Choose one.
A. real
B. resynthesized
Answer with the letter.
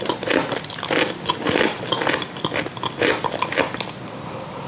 A